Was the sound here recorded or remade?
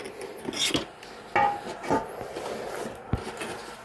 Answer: recorded